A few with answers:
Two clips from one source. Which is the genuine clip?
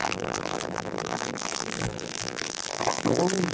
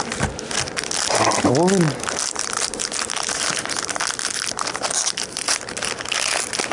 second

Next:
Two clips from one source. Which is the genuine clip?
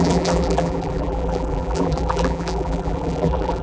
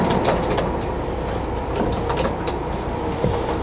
second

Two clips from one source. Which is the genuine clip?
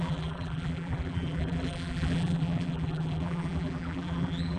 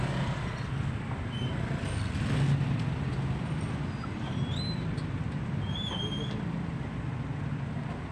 second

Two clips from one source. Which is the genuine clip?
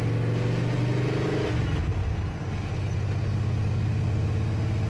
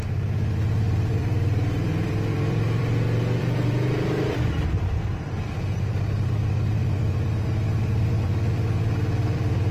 first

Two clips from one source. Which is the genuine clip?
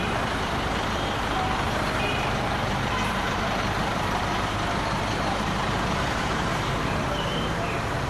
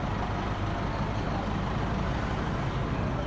second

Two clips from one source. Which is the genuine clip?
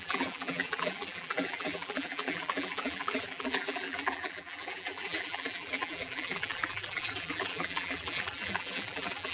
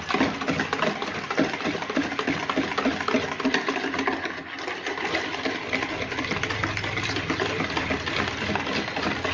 second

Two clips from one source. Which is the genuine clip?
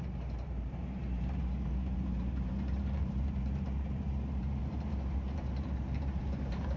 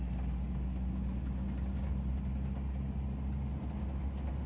second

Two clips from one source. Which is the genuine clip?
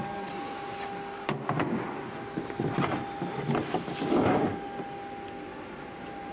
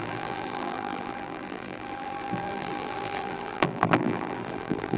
first